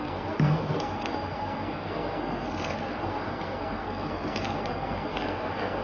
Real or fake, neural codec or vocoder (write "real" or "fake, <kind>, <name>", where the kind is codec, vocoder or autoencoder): fake, codec, SNAC